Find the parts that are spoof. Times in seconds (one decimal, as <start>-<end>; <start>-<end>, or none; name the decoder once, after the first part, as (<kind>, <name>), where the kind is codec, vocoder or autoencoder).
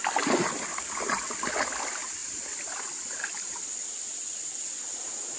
none